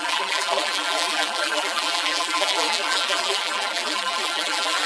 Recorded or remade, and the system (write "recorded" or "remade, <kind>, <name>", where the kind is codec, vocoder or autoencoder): remade, vocoder, BigVGAN v2